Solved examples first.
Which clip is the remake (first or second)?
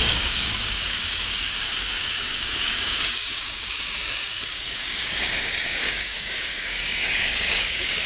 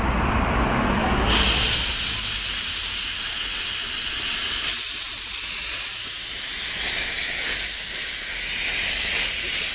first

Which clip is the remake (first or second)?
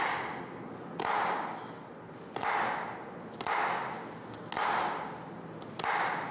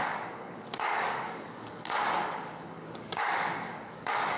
second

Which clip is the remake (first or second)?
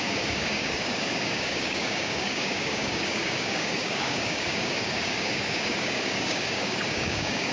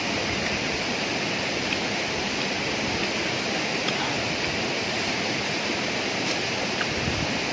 first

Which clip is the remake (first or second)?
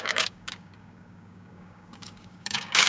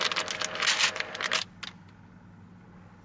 first